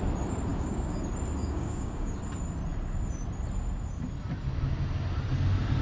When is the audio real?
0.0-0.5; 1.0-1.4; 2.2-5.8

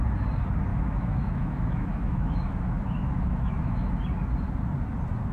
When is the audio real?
0.0-0.7; 3.9-5.3

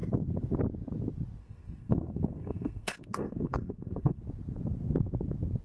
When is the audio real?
0.0-1.4; 4.2-5.6

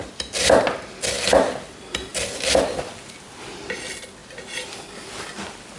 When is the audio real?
0.0-5.8

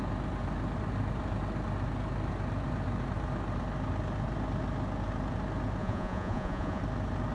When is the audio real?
0.0-5.8; 6.8-7.3